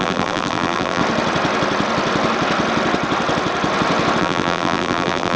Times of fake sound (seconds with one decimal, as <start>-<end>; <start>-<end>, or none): 0.0-1.0; 4.2-5.4